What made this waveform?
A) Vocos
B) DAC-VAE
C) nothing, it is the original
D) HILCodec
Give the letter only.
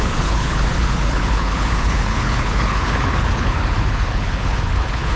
D